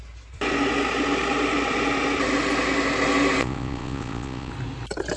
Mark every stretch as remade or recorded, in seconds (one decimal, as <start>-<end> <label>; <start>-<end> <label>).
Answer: 0.0-3.4 recorded; 3.4-4.5 remade; 4.5-5.2 recorded